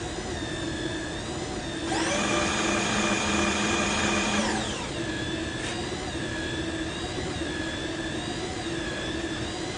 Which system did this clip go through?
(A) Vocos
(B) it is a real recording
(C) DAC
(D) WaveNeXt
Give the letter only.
B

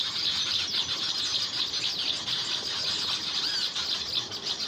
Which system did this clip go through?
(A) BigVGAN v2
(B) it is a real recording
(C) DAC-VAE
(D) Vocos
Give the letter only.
B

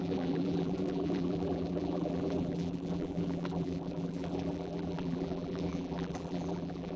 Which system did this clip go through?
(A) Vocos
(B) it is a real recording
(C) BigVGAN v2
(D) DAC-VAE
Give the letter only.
C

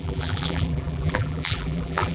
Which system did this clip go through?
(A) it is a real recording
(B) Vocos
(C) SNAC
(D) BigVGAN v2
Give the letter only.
D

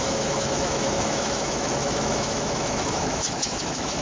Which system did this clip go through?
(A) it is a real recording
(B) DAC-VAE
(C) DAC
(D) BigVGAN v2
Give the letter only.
B